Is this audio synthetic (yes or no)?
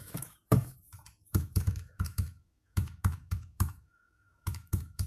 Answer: yes